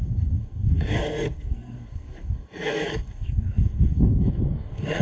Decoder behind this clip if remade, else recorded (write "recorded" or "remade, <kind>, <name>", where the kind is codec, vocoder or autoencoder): remade, codec, SNAC